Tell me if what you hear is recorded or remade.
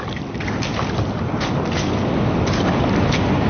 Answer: recorded